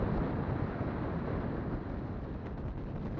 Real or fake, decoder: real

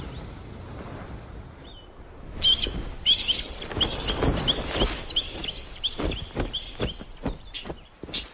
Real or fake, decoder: real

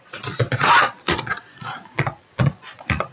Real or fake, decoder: fake, vocoder, Vocos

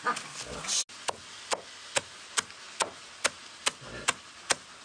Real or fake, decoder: real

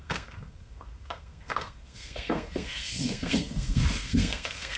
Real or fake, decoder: fake, codec, SNAC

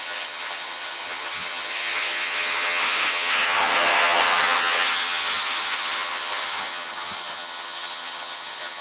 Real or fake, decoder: fake, vocoder, HiFi-GAN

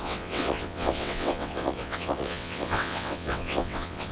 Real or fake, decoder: fake, vocoder, WaveNeXt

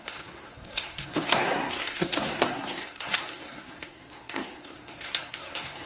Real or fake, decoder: fake, codec, SNAC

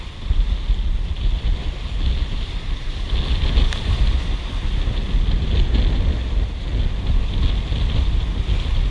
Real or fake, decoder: real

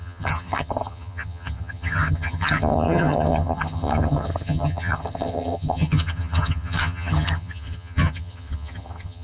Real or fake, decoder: fake, vocoder, HiFi-GAN